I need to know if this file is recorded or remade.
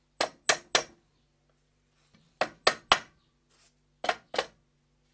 recorded